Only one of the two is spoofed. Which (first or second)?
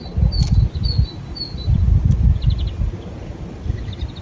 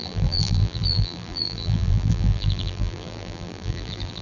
second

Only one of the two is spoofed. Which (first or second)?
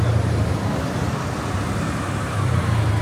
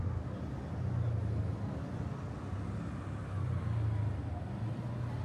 first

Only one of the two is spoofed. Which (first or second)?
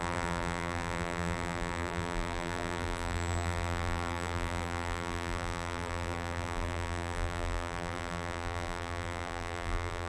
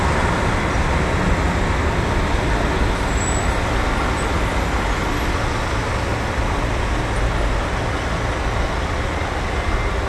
first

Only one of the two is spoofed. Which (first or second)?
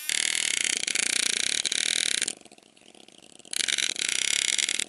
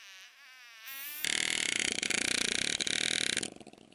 second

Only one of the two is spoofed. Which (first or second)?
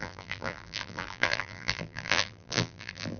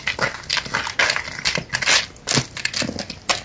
first